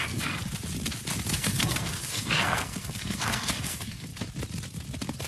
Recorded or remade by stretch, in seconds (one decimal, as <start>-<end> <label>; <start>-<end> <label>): 0.0-0.4 remade; 0.4-1.3 recorded; 1.3-4.1 remade; 4.1-5.3 recorded